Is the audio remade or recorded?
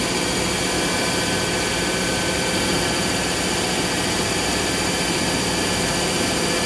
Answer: recorded